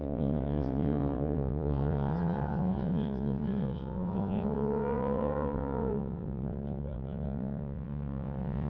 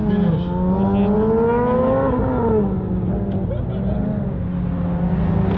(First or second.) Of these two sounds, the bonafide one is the second